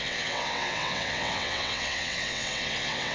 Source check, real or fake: fake